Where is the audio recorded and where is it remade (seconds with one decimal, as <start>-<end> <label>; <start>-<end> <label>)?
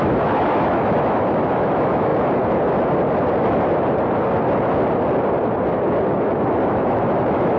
0.0-2.1 remade; 2.1-6.7 recorded; 6.7-7.6 remade